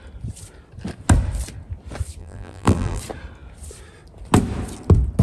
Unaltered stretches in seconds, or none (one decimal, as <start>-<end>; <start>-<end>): 0.0-2.2; 3.0-5.2